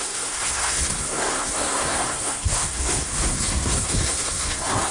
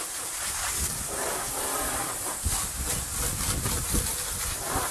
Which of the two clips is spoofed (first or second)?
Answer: first